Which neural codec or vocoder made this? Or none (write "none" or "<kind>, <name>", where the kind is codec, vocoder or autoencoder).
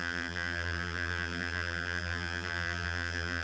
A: vocoder, BigVGAN v2